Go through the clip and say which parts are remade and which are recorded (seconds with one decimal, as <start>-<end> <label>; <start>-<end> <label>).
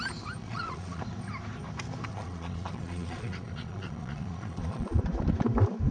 0.0-0.4 recorded; 0.4-1.0 remade; 1.0-2.1 recorded; 2.1-5.0 remade; 5.0-5.9 recorded